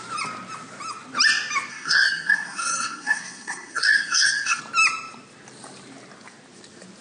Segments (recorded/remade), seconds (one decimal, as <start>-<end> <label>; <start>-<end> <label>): 0.0-1.7 recorded; 1.7-4.6 remade; 4.6-7.0 recorded